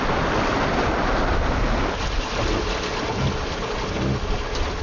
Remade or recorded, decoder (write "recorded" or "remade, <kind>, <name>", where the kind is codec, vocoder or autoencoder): recorded